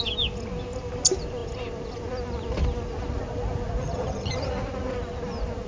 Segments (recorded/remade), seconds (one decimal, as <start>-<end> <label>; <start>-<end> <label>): 0.0-3.8 recorded; 3.8-4.5 remade; 4.5-5.7 recorded